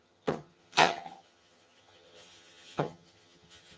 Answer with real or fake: fake